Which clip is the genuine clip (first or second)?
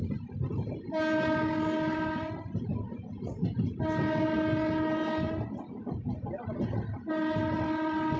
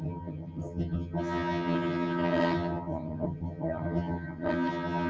first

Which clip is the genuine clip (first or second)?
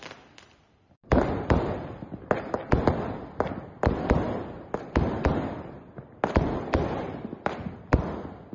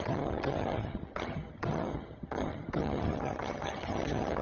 first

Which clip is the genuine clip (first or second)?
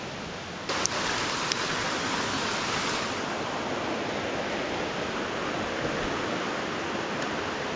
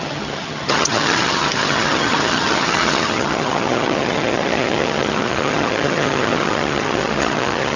first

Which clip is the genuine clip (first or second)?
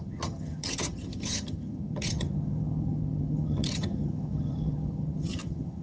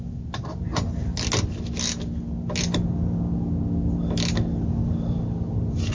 second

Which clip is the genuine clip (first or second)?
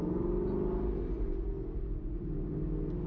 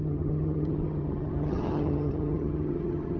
first